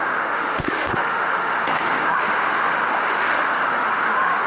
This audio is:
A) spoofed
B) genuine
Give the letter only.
A